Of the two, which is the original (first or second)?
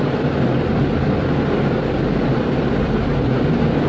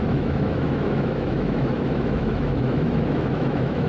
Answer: first